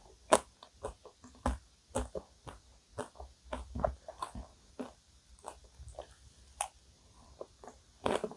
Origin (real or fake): real